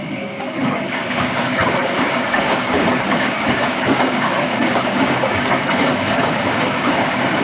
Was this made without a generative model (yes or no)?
no